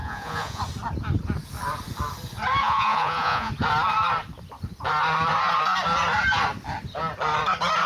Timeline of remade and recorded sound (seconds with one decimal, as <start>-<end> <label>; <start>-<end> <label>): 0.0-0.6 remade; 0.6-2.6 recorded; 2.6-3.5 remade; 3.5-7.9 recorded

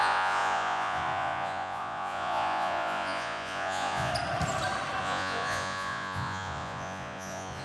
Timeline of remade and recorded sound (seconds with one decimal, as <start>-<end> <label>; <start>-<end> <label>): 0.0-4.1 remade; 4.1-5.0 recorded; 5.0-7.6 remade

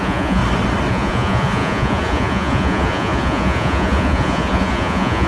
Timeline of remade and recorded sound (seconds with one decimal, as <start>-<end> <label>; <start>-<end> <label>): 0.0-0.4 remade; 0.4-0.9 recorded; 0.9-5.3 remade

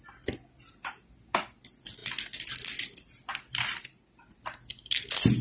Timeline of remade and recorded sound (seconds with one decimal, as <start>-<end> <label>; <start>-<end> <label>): 0.0-5.4 recorded

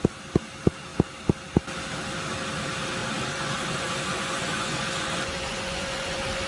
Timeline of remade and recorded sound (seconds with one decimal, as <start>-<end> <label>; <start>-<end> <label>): 0.0-3.0 recorded; 3.0-6.5 remade